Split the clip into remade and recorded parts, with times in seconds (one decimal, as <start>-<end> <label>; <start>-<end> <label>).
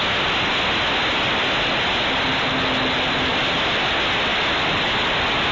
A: 0.0-5.5 recorded